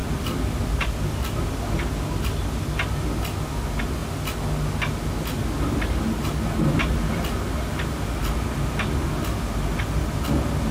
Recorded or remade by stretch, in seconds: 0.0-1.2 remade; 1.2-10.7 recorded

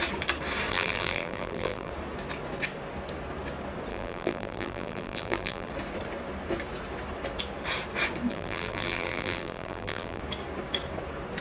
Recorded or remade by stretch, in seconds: 0.0-0.7 recorded; 0.7-1.9 remade; 1.9-3.9 recorded; 3.9-5.7 remade; 5.7-8.3 recorded; 8.3-10.2 remade; 10.2-11.4 recorded